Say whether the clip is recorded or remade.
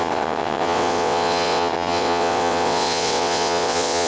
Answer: remade